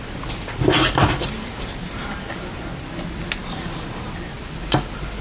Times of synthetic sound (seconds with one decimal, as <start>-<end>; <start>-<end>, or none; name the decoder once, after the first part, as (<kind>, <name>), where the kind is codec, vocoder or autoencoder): 1.5-2.3 (vocoder, BigVGAN v2)